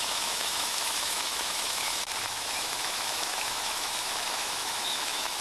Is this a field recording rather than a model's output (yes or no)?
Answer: no